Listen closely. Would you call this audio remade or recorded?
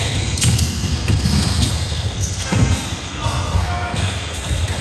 remade